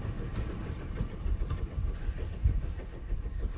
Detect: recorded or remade recorded